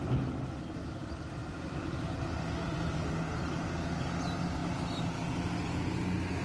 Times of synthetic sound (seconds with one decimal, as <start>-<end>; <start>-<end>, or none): none